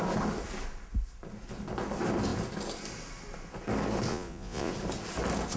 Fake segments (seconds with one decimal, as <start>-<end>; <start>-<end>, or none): 4.1-4.7